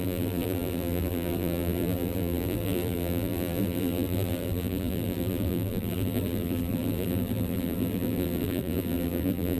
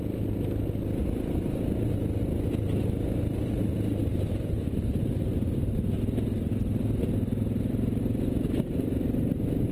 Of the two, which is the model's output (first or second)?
first